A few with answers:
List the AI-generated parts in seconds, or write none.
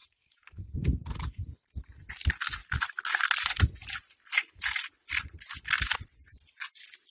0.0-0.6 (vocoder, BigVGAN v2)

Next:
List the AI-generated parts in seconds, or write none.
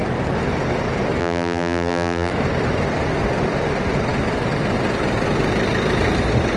1.2-2.3 (vocoder, BigVGAN v2)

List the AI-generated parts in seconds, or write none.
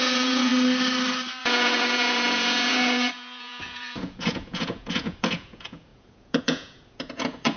0.0-0.5 (vocoder, Vocos); 1.4-7.6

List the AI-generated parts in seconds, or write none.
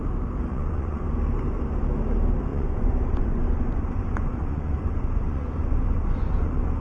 0.5-1.0 (vocoder, Vocos); 2.5-6.8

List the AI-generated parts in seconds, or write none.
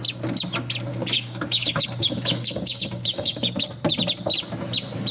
0.9-3.7 (codec, DAC)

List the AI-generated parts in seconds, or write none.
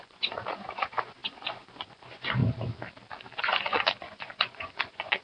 0.0-2.4 (vocoder, Vocos); 3.4-5.2